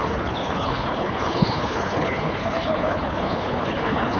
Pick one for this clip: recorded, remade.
remade